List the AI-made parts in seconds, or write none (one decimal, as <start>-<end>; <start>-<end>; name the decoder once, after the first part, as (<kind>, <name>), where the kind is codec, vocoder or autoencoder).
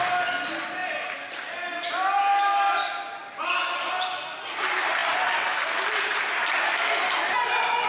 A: none